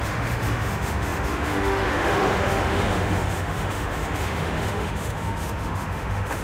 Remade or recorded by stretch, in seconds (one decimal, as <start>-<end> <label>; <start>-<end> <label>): 0.0-6.4 remade